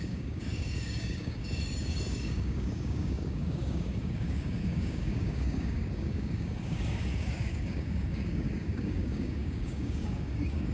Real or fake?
fake